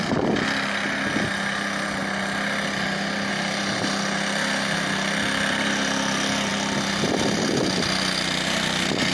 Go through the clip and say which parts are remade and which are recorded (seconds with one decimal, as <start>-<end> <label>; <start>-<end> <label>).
0.0-9.1 recorded